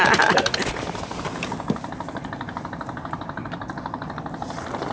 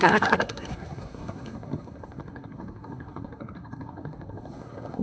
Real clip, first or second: first